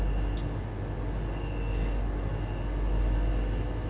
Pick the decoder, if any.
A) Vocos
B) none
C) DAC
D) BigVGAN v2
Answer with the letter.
B